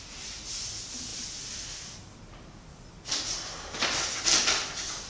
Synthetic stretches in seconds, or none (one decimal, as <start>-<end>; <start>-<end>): none